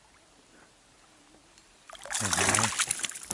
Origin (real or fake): real